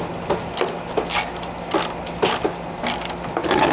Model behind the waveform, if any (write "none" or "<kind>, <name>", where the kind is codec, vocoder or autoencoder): none